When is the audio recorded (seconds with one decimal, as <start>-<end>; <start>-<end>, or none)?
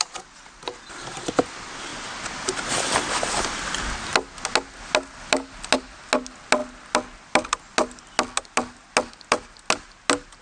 0.0-10.4